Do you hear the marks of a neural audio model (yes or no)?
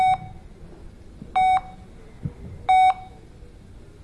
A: no